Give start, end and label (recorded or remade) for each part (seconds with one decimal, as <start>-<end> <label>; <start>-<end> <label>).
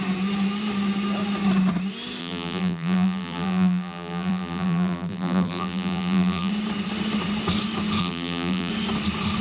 0.0-2.2 recorded; 2.2-6.5 remade; 6.5-8.0 recorded; 8.0-8.7 remade; 8.7-9.4 recorded